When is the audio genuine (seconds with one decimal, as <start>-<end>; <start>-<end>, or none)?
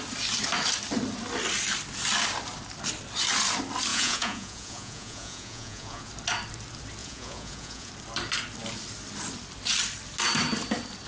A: 0.0-3.9; 6.1-7.0; 7.9-11.1